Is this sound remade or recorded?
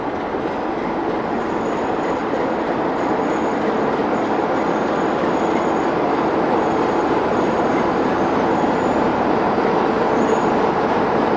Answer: remade